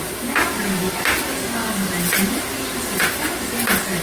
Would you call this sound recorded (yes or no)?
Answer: yes